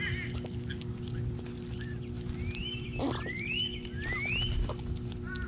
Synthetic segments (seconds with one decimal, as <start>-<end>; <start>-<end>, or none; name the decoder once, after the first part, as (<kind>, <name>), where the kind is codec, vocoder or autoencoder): 2.6-3.6 (vocoder, BigVGAN v2)